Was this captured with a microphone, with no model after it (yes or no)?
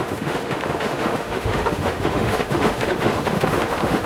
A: no